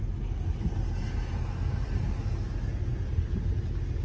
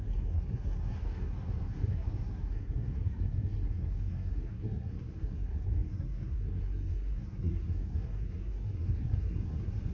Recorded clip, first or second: first